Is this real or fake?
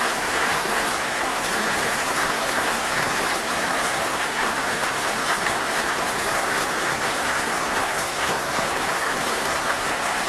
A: fake